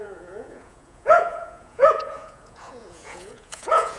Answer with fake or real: fake